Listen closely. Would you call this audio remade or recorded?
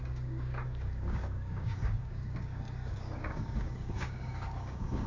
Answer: remade